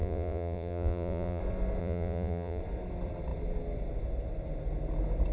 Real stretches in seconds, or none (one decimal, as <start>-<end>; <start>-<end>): 1.4-1.8; 2.6-5.3